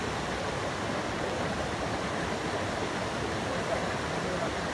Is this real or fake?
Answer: real